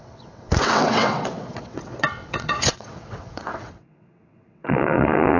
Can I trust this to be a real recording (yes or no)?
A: no